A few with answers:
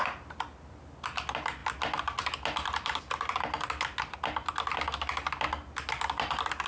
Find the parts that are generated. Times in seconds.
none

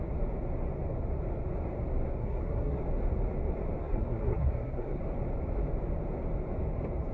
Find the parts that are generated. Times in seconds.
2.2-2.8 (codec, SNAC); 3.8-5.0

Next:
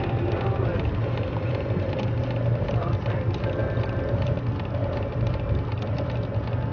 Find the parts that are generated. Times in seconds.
0.7-1.5 (vocoder, BigVGAN v2)

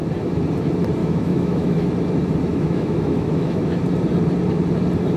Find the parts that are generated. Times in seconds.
1.0-1.9 (autoencoder, DAC-VAE); 2.5-3.8